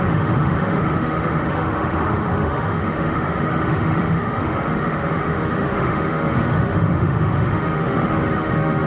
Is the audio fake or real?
fake